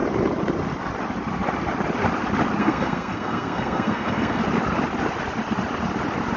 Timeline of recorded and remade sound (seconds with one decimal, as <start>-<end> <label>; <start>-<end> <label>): 0.0-2.6 recorded; 2.6-4.4 remade; 4.4-6.4 recorded